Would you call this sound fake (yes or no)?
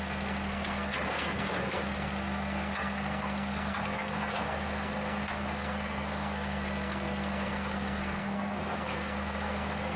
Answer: yes